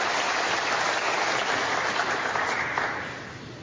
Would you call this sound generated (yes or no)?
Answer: no